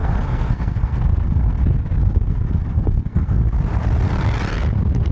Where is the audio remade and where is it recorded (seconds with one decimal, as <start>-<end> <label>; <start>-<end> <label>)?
0.0-1.6 remade; 1.6-2.0 recorded; 2.0-3.4 remade; 3.4-5.1 recorded